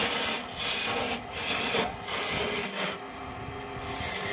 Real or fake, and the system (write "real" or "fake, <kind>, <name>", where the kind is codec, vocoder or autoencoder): real